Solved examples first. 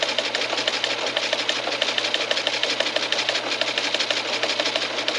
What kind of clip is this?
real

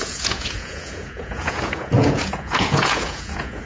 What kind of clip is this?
fake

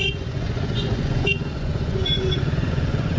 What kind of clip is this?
fake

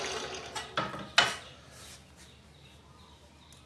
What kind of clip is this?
real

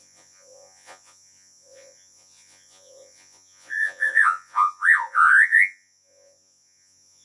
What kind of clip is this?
fake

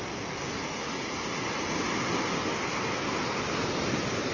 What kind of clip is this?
real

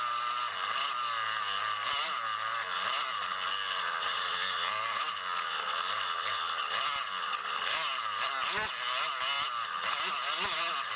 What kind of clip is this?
real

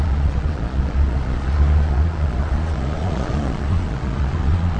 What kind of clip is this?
fake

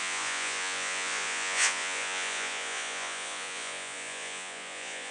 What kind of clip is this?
fake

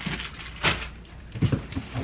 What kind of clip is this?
real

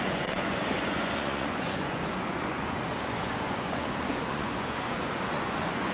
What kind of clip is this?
fake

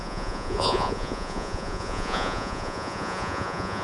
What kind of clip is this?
fake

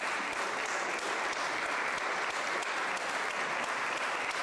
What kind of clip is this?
real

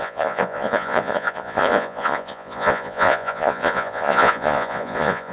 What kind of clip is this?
fake